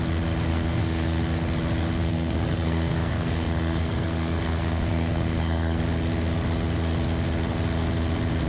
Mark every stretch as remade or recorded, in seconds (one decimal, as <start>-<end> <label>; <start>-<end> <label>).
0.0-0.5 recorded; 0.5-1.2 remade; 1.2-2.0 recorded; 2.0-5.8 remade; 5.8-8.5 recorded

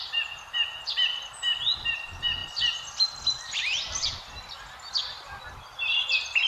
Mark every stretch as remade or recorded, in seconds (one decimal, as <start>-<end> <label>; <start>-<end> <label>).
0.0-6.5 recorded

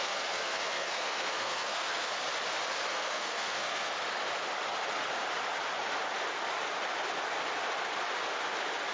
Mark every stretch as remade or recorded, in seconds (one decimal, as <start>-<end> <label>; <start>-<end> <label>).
0.0-2.1 remade; 2.1-2.9 recorded; 2.9-3.9 remade; 3.9-8.9 recorded

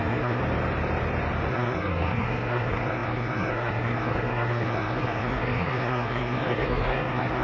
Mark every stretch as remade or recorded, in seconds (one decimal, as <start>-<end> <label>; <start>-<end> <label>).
0.0-0.4 remade; 0.4-1.5 recorded; 1.5-7.4 remade

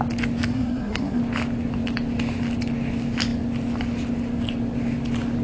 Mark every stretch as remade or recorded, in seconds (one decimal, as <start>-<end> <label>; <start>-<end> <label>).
0.0-0.5 recorded; 0.5-1.2 remade; 1.2-5.4 recorded

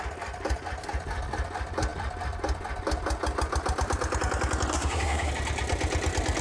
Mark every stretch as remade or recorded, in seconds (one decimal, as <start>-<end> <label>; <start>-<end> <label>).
0.0-4.7 recorded; 4.7-5.3 remade; 5.3-6.4 recorded

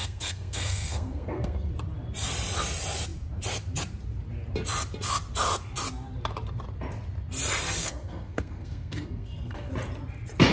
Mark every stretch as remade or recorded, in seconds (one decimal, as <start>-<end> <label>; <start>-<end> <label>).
0.0-1.7 remade; 1.7-7.8 recorded; 7.8-9.7 remade; 9.7-10.5 recorded